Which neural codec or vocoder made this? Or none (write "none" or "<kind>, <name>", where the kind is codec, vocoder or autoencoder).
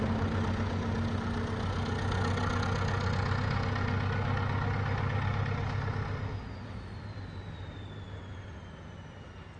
none